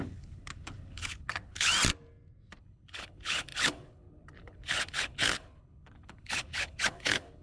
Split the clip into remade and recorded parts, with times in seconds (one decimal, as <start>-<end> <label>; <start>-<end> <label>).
0.0-1.7 remade; 1.7-2.6 recorded; 2.6-7.4 remade